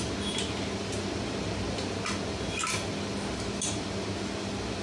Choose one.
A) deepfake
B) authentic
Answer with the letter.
B